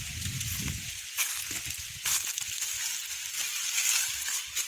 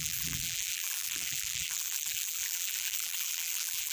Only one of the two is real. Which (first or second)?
first